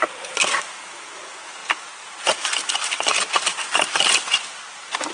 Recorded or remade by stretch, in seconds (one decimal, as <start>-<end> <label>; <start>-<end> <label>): 0.0-5.1 recorded